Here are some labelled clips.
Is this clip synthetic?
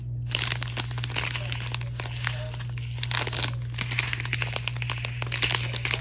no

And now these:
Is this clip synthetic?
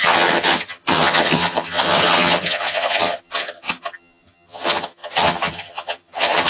yes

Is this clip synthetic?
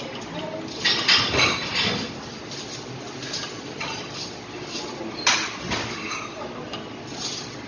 no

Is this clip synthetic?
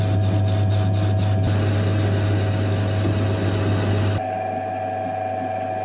no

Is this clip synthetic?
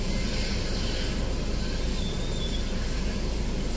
no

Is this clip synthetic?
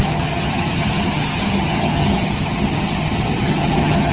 yes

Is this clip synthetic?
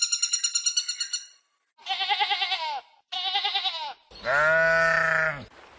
no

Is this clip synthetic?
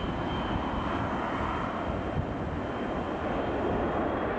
no